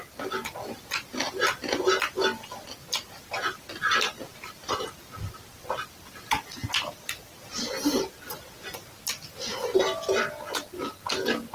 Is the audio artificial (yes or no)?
no